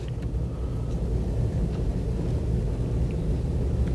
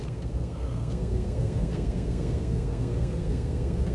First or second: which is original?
first